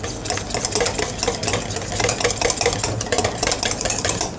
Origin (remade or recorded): recorded